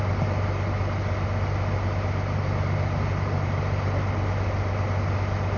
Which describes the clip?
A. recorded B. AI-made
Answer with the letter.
A